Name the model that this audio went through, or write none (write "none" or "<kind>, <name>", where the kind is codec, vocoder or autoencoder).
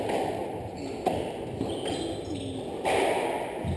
none